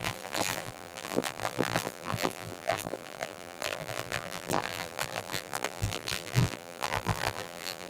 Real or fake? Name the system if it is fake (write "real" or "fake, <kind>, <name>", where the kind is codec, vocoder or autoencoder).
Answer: fake, vocoder, BigVGAN v2